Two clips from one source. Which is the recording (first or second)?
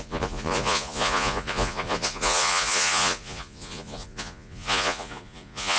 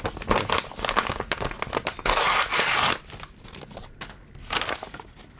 second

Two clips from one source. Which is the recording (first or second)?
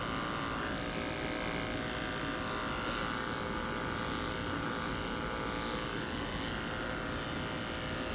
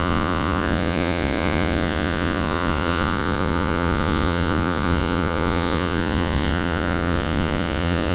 first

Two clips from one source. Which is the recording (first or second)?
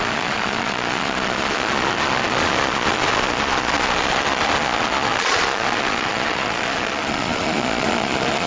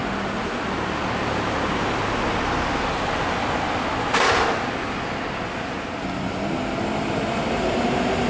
second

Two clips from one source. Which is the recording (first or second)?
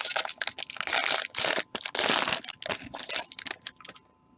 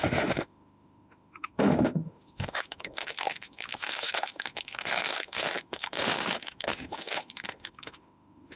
first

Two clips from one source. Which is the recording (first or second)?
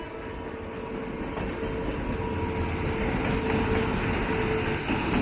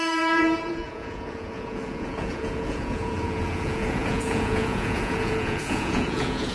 first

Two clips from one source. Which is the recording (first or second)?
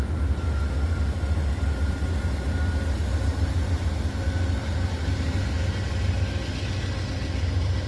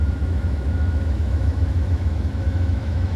first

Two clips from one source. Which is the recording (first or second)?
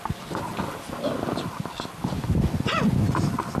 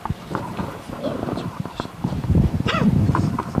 first